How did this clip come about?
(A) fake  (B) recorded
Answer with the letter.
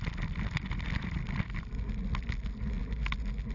B